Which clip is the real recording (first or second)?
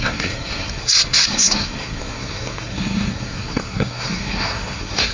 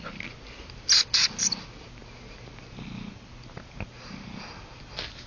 second